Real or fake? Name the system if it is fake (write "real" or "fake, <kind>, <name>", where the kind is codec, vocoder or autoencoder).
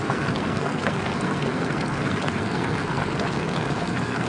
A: fake, codec, SNAC